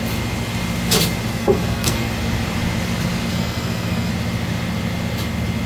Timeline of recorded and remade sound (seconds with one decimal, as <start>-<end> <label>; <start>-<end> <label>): 0.0-1.3 recorded; 1.3-2.1 remade; 2.1-3.3 recorded; 3.3-4.1 remade; 4.1-5.7 recorded